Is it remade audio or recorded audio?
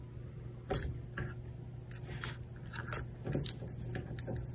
recorded